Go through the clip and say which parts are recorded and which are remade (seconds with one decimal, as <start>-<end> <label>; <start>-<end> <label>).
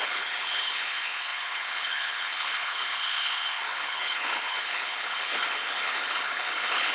0.0-6.9 remade